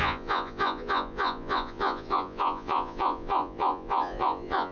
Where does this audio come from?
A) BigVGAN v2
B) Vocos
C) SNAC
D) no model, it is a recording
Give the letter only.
B